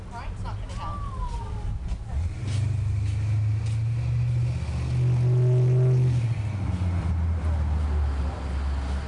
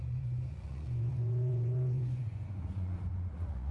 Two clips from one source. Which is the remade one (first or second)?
second